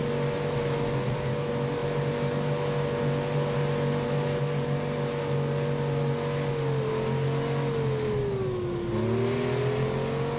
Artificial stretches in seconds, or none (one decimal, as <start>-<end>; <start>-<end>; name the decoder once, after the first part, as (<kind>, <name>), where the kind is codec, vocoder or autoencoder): none